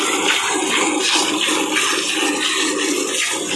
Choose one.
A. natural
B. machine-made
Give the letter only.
A